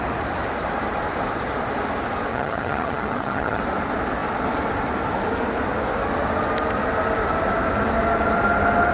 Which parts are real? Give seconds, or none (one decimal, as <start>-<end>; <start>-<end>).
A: 0.0-2.3; 3.6-8.9